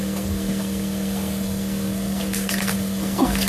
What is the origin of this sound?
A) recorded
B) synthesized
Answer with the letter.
B